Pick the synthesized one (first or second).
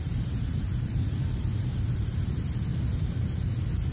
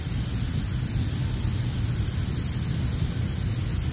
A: first